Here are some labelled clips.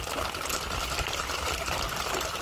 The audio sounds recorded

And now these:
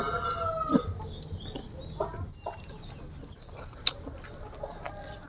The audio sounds recorded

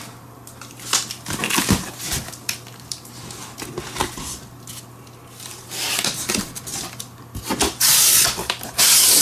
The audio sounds recorded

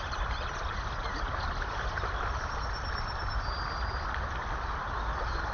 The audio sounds recorded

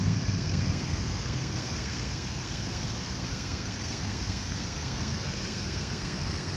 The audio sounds remade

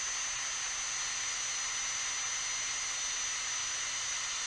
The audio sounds recorded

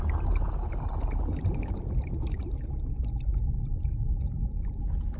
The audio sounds recorded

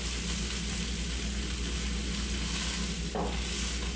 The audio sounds recorded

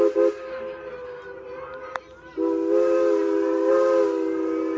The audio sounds recorded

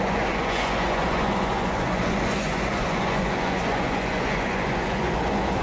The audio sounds remade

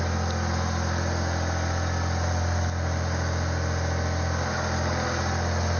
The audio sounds recorded